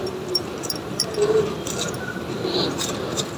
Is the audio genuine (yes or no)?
no